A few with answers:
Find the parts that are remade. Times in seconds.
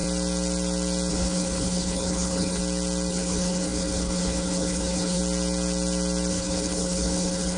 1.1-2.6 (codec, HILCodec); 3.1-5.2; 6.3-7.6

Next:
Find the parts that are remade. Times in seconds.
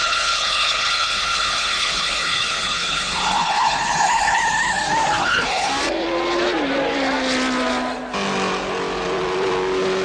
0.0-4.4 (codec, HILCodec); 5.2-5.7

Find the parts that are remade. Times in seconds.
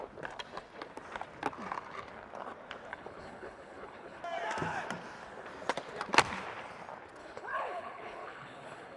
2.9-4.2 (codec, HILCodec); 7.2-9.0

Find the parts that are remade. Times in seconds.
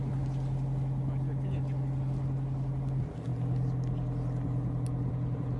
none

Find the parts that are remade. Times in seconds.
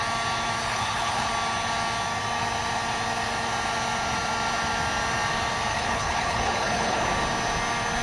0.6-1.3 (codec, HILCodec); 5.7-7.0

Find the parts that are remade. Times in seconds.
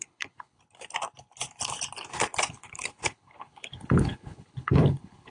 0.0-0.6 (codec, HILCodec); 2.5-5.3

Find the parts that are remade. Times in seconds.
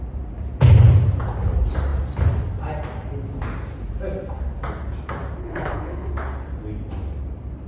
5.4-6.1 (codec, HILCodec)